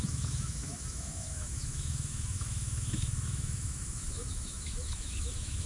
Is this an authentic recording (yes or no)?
no